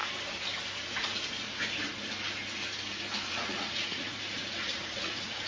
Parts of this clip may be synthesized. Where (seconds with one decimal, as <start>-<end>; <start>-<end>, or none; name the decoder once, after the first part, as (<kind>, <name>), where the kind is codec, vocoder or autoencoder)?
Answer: 3.3-5.5 (vocoder, Vocos)